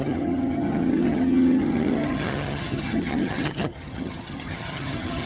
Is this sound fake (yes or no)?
yes